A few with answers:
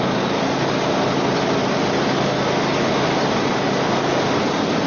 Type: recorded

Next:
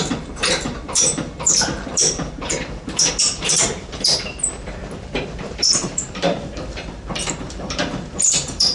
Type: remade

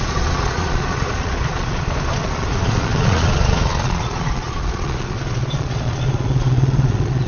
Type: remade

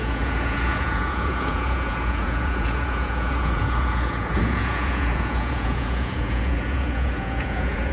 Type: remade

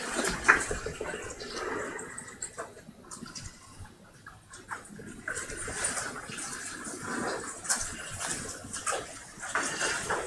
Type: recorded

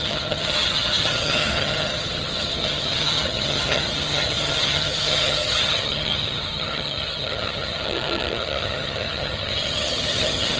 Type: remade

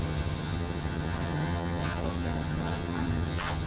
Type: remade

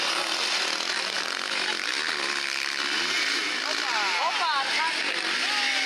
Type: recorded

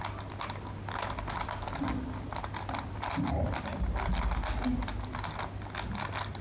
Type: recorded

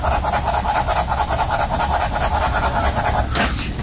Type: recorded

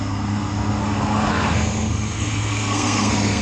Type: remade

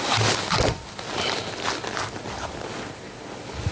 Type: recorded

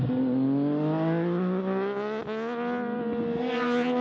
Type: recorded